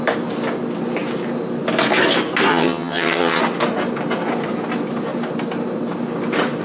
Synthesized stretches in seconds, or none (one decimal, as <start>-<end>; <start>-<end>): 2.5-3.4